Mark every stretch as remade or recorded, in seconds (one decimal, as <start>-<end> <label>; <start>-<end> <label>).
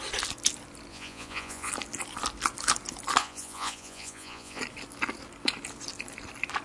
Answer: 0.0-0.9 recorded; 0.9-1.7 remade; 1.7-3.2 recorded; 3.2-4.6 remade; 4.6-6.6 recorded